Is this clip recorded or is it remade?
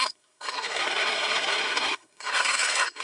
remade